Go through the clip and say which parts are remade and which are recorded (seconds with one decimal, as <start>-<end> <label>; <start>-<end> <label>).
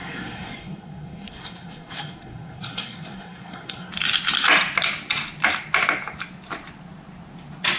0.0-3.9 remade; 3.9-7.8 recorded